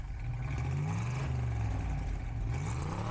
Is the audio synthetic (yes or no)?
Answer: no